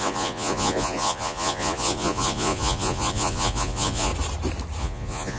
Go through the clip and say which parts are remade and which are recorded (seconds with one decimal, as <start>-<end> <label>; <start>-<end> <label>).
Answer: 0.0-4.1 remade; 4.1-4.8 recorded; 4.8-5.4 remade